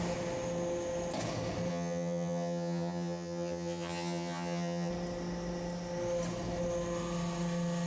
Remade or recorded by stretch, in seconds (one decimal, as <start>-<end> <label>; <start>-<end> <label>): 0.0-1.7 recorded; 1.7-4.9 remade; 4.9-7.9 recorded